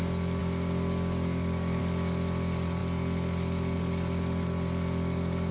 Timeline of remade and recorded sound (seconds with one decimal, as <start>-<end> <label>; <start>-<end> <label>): 0.0-0.4 recorded; 0.4-1.8 remade; 1.8-5.5 recorded